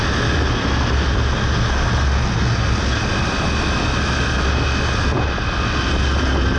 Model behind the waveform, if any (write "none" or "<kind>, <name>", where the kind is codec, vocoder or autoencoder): none